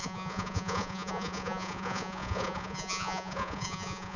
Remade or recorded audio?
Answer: remade